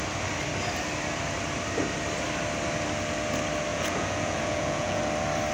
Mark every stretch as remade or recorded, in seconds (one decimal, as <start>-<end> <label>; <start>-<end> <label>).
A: 0.0-3.7 recorded; 3.7-5.0 remade; 5.0-5.5 recorded

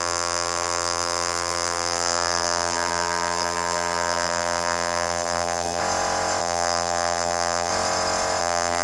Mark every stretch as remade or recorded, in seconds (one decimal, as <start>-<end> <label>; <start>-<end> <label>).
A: 0.0-5.8 remade; 5.8-6.4 recorded; 6.4-7.7 remade; 7.7-8.4 recorded; 8.4-8.8 remade

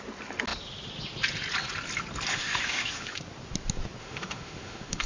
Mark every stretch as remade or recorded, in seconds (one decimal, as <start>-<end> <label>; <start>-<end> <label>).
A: 0.0-2.3 recorded; 2.3-3.2 remade; 3.2-4.0 recorded; 4.0-5.1 remade

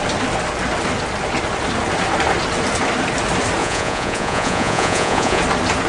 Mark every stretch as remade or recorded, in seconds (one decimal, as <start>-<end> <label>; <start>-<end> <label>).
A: 0.0-3.6 recorded; 3.6-5.4 remade; 5.4-5.9 recorded